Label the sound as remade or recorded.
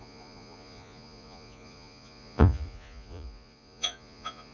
remade